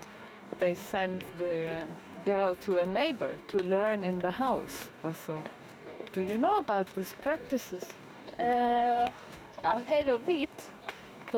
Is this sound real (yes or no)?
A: no